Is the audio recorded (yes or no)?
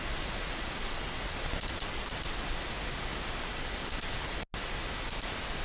yes